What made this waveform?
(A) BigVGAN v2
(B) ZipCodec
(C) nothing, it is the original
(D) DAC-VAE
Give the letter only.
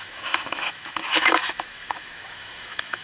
D